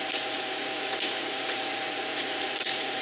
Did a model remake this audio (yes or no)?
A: yes